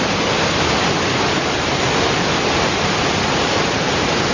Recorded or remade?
recorded